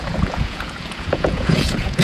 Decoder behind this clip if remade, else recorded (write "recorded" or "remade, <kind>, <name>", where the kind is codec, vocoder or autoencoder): remade, vocoder, Vocos